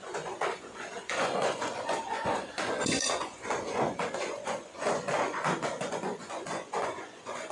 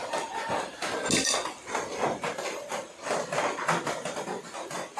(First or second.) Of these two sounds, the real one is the second